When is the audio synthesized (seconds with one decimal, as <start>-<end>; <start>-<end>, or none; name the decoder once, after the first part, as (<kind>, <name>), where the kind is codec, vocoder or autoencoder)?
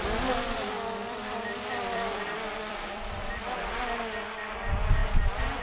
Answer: 1.0-3.8 (vocoder, BigVGAN v2); 5.0-5.6